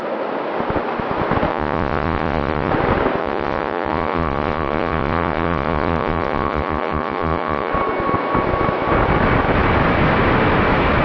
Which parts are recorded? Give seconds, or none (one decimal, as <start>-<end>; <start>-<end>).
0.0-1.5; 2.7-3.2; 7.7-11.0